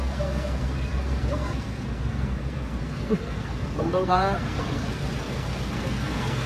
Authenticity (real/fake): fake